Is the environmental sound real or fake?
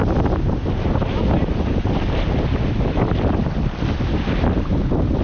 real